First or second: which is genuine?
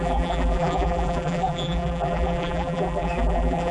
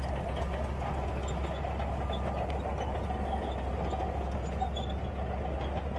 second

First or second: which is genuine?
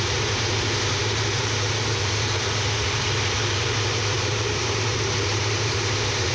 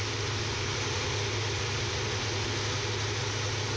second